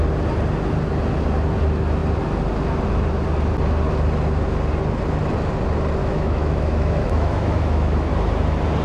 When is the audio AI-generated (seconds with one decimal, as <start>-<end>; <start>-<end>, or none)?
6.0-8.1